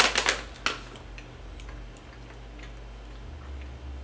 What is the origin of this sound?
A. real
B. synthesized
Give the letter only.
A